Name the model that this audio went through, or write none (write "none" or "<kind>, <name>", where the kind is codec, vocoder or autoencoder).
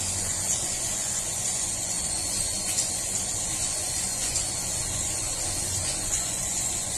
vocoder, Vocos